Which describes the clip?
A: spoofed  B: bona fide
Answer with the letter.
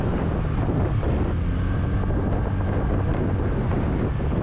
B